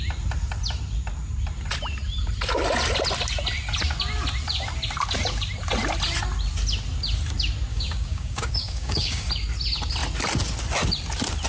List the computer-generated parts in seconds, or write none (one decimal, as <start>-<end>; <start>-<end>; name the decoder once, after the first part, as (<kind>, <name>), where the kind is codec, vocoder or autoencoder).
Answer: 7.7-9.3 (codec, DAC)